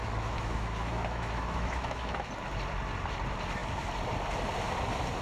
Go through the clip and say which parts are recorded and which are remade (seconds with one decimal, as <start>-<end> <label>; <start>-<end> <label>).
0.0-2.3 remade; 2.3-5.2 recorded